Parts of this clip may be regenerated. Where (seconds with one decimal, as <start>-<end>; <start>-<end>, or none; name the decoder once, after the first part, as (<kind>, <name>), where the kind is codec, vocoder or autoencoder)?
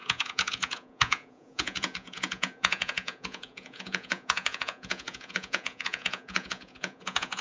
0.0-7.4 (vocoder, Vocos)